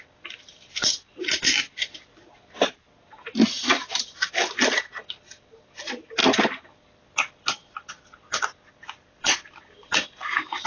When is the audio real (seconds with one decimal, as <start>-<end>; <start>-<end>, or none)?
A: 0.0-10.7